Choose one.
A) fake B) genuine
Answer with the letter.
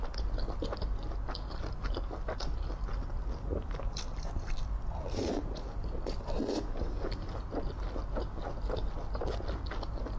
B